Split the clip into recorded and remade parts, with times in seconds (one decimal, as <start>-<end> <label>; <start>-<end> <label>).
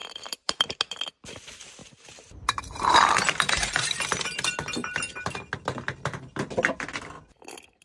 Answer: 0.0-0.8 remade; 0.8-1.8 recorded; 1.8-3.7 remade; 3.7-7.8 recorded